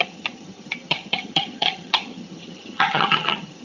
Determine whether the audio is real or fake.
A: fake